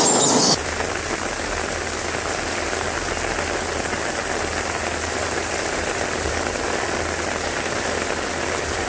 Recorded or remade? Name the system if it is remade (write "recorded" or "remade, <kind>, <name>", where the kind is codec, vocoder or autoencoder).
recorded